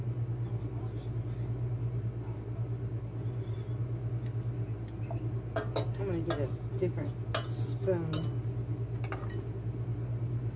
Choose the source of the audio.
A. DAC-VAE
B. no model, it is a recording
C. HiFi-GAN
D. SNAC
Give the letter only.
B